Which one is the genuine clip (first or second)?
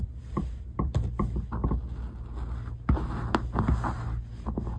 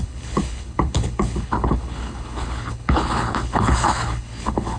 first